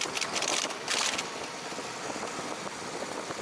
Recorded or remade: recorded